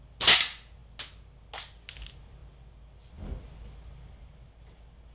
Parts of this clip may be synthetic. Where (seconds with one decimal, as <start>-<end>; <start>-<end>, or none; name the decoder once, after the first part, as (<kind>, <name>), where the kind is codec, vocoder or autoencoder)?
none